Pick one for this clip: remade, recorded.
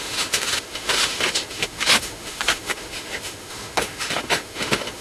remade